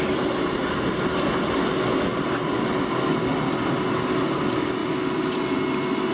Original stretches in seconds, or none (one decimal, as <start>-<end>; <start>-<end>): 0.0-6.1